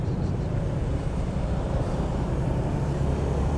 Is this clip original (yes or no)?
no